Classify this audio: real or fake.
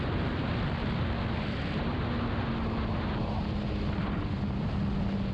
real